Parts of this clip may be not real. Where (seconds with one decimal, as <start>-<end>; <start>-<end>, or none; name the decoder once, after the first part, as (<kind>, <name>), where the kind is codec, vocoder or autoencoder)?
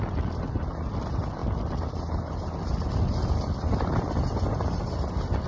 none